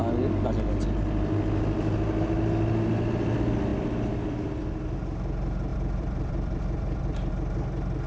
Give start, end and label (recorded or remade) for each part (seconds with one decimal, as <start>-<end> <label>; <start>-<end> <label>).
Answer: 0.0-3.7 recorded; 3.7-4.6 remade; 4.6-5.7 recorded; 5.7-7.3 remade; 7.3-8.1 recorded